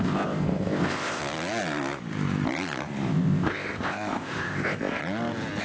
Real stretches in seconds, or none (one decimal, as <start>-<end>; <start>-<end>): 1.2-3.1; 5.0-5.6

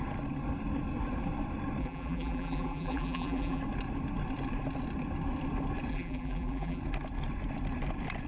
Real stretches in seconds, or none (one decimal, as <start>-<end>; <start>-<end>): 0.0-1.8; 3.6-5.9; 6.8-8.3

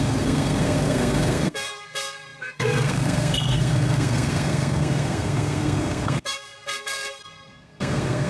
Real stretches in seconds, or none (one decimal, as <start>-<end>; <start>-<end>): none